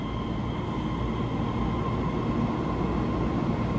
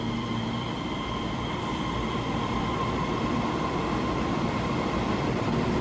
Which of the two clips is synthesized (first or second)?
second